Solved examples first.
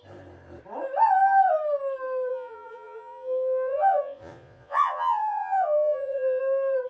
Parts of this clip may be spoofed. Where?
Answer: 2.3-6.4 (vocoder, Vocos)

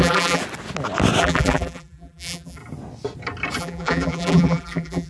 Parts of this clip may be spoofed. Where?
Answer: 0.0-0.4 (vocoder, BigVGAN v2); 1.2-2.6; 3.6-5.1

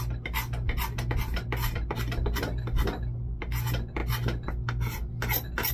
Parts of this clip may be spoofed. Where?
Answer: none

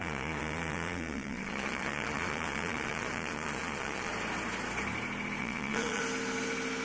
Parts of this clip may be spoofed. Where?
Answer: 0.0-4.1 (vocoder, Vocos); 5.4-6.0

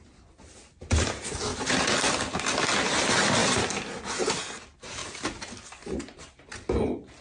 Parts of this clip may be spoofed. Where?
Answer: none

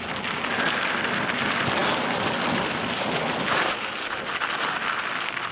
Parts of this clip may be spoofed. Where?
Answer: none